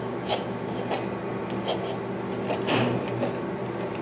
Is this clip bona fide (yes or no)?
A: yes